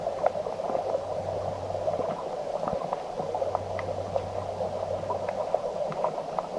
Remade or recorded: recorded